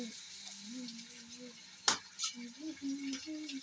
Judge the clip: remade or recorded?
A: recorded